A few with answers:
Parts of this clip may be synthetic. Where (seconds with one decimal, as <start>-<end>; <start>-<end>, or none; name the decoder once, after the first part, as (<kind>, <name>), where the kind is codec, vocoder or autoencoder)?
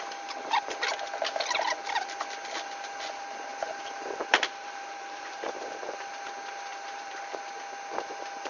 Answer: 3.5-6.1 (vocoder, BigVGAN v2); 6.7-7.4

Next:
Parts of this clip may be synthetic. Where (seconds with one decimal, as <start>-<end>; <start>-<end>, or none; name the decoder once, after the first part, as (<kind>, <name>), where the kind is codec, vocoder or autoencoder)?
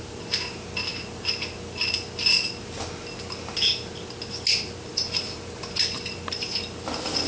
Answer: none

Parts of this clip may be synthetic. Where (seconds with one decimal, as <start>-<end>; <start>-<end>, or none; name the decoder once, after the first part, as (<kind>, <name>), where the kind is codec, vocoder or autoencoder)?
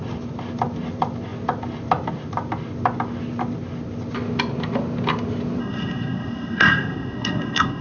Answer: 5.6-7.8 (codec, SNAC)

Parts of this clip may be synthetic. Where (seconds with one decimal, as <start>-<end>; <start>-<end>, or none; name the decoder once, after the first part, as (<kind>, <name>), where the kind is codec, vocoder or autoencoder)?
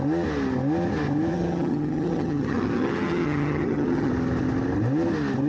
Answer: 1.3-4.1 (vocoder, HiFi-GAN)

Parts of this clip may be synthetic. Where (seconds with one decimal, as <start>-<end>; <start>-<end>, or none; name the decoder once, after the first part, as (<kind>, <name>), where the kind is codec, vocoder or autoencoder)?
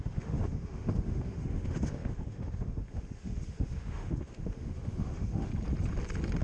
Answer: 0.0-5.5 (autoencoder, DAC-VAE)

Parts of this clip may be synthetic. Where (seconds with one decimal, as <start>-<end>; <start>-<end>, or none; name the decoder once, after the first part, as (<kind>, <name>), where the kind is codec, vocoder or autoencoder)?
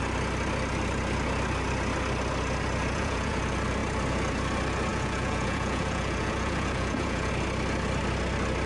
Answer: 2.9-3.4 (vocoder, Vocos); 4.9-7.3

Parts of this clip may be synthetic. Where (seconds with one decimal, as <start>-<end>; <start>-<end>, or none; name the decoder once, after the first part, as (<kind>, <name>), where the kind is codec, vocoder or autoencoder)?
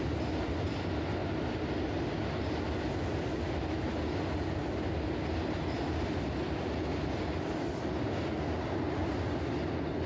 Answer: none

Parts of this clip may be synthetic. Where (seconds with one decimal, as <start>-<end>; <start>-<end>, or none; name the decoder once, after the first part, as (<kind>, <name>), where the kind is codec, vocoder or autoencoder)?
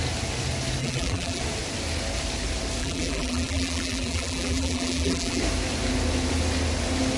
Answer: 0.8-1.4 (vocoder, BigVGAN v2); 2.8-5.4